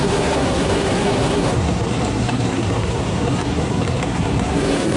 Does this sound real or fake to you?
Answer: fake